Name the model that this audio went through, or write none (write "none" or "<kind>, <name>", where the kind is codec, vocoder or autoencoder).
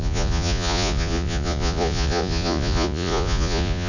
vocoder, Vocos